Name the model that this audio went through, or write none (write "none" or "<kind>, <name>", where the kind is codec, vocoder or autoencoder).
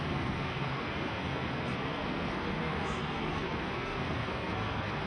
codec, SNAC